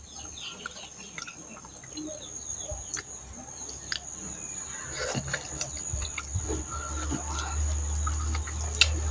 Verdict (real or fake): real